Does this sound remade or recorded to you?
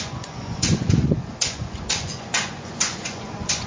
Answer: remade